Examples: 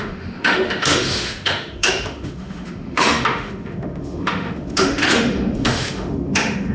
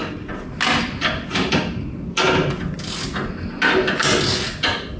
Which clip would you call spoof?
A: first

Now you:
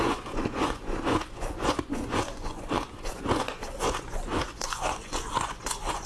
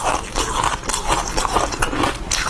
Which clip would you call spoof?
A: first